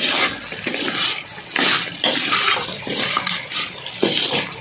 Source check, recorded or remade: recorded